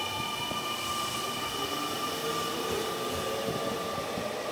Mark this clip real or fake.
real